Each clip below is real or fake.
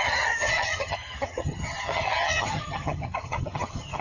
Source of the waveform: fake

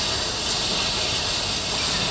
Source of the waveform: real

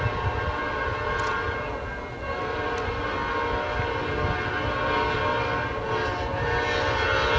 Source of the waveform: real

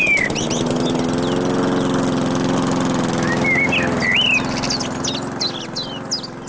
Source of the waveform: real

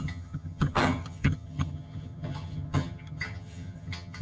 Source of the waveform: fake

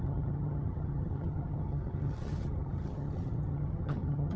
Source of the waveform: fake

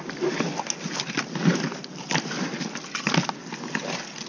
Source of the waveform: real